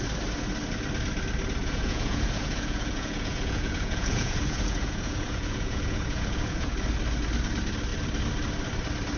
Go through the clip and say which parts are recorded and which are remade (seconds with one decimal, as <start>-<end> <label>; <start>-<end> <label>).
0.0-1.6 recorded; 1.6-6.7 remade; 6.7-9.2 recorded